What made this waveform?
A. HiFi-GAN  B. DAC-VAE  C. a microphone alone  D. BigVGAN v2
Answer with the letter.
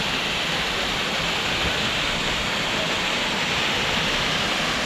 C